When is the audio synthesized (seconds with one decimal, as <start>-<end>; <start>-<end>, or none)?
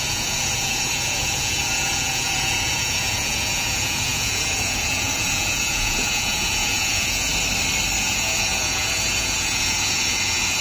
0.0-7.3; 8.0-10.6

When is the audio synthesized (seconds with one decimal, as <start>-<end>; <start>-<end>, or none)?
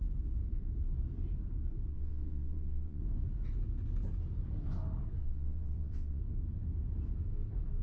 1.9-3.0; 5.2-6.2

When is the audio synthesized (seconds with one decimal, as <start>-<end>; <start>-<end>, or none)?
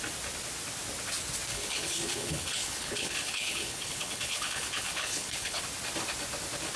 1.5-5.6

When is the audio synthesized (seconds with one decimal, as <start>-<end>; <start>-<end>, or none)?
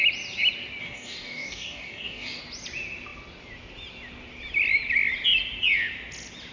0.8-2.4